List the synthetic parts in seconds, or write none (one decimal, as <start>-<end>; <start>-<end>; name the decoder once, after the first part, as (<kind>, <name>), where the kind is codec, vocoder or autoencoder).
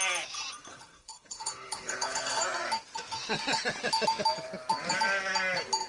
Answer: 0.7-2.4 (codec, HILCodec)